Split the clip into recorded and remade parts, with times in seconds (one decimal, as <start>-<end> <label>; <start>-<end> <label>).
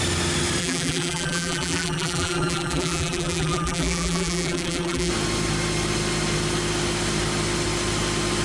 0.0-0.6 recorded; 0.6-5.1 remade; 5.1-8.4 recorded